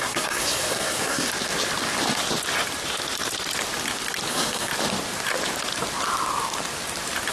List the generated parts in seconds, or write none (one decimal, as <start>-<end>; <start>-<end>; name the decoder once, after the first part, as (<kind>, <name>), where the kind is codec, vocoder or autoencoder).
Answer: 0.0-1.3 (codec, SNAC); 4.3-4.7